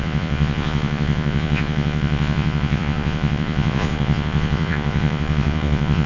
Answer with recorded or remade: remade